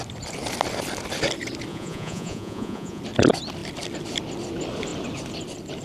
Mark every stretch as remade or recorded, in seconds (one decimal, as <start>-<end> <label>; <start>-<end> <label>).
0.0-1.7 recorded; 1.7-3.0 remade; 3.0-5.8 recorded